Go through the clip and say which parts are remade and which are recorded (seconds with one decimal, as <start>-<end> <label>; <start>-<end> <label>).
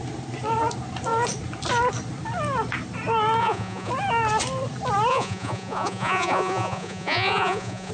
0.0-3.4 recorded; 3.4-3.9 remade; 3.9-5.1 recorded; 5.1-7.9 remade